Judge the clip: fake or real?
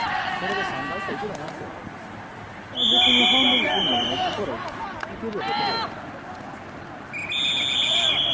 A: real